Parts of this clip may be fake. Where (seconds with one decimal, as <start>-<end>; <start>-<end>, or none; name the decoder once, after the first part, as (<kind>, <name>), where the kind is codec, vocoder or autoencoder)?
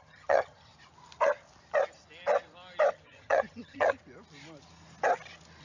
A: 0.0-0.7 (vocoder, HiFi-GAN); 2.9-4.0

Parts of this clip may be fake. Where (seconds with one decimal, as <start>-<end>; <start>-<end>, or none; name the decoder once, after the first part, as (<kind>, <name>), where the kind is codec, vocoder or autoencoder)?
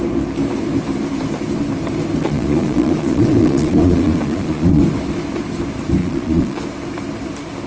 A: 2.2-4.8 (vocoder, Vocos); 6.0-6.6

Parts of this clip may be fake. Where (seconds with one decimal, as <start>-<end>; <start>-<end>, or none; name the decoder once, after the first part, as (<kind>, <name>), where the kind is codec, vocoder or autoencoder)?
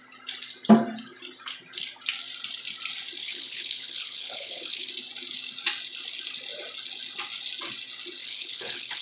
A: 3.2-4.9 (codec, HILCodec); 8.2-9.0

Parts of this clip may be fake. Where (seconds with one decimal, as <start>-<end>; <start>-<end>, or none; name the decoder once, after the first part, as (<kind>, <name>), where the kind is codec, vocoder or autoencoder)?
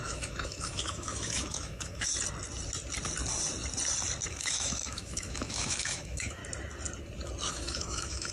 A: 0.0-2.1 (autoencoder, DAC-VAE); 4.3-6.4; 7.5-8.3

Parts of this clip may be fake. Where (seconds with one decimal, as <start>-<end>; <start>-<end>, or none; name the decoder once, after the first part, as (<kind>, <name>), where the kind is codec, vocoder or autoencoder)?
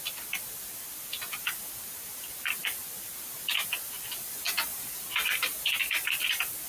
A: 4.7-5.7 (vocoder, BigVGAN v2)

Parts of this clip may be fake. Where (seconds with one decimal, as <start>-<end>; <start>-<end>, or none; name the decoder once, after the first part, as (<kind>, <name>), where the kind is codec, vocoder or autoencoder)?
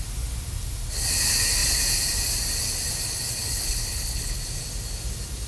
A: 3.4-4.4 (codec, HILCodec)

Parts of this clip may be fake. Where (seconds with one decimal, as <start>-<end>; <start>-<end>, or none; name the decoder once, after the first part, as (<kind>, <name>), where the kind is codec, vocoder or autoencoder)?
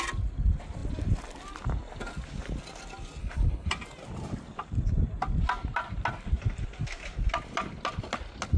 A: 3.2-3.7 (codec, HILCodec)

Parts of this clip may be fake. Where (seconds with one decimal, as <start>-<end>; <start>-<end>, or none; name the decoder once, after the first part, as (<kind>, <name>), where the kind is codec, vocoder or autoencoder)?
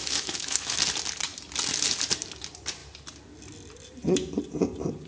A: 0.0-0.8 (autoencoder, DAC-VAE)